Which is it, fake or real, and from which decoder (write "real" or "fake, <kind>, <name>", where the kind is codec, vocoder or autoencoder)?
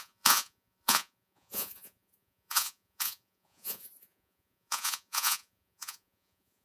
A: fake, vocoder, Vocos